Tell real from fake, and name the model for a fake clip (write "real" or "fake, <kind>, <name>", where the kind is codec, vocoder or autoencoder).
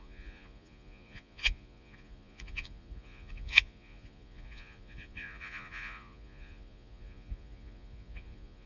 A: fake, vocoder, Vocos